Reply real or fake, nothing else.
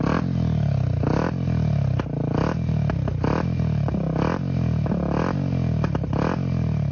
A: real